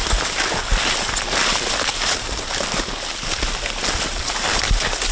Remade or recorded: recorded